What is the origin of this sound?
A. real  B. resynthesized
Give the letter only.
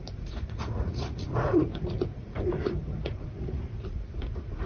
B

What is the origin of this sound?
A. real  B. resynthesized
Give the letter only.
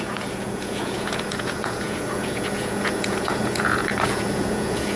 B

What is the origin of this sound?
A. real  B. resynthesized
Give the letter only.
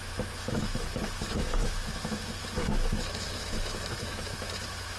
B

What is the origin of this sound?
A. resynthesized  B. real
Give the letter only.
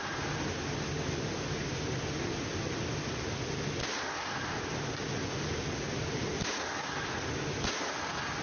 B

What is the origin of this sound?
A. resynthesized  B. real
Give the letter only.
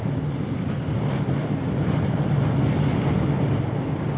B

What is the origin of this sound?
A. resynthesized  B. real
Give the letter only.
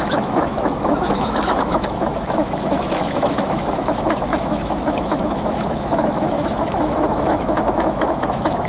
A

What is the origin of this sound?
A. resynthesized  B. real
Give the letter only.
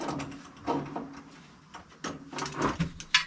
B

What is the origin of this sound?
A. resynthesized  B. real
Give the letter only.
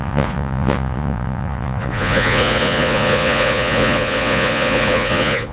A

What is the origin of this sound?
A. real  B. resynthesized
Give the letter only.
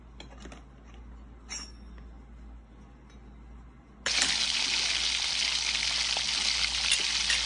A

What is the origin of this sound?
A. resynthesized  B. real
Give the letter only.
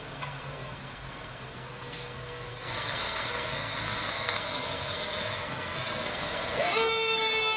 A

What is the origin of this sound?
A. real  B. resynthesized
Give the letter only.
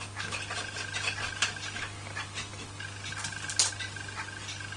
A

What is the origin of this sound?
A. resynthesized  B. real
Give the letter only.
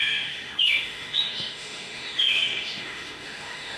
A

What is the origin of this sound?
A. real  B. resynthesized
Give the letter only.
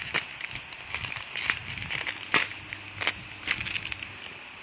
A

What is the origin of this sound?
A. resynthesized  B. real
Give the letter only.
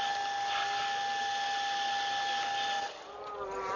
B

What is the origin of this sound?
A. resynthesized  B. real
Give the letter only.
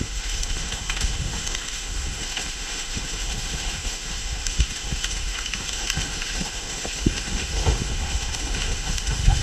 A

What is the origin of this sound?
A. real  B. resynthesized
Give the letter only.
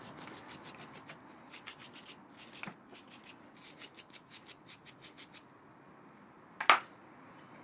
A